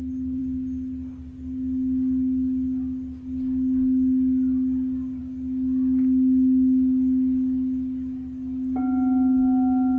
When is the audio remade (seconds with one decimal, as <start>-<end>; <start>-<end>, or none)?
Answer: none